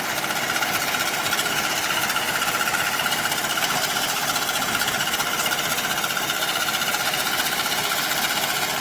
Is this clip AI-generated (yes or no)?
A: yes